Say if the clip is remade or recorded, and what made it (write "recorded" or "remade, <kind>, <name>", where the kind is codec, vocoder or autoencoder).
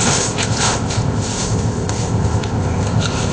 remade, codec, ZipCodec